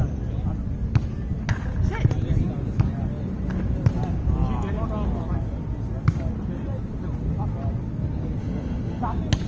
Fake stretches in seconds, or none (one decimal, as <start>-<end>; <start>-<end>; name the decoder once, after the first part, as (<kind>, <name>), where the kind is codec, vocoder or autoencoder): 8.4-9.0 (autoencoder, DAC-VAE)